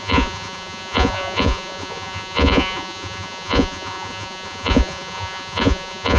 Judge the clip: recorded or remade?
remade